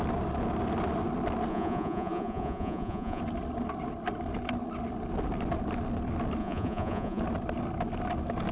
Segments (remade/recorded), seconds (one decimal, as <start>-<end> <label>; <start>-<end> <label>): 0.0-1.5 recorded; 1.5-3.2 remade; 3.2-6.4 recorded; 6.4-7.2 remade; 7.2-8.5 recorded